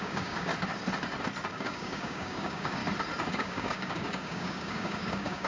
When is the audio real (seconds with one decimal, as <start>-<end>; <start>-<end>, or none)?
0.5-1.5; 2.8-3.3